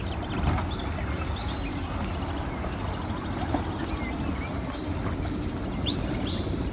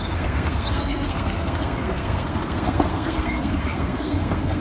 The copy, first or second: second